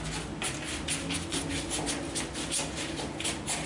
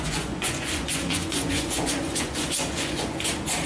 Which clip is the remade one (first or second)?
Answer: second